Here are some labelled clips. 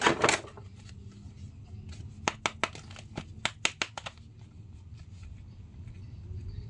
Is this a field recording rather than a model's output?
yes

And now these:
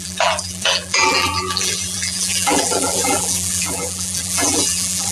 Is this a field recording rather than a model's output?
no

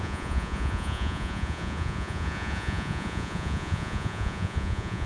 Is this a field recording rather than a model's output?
no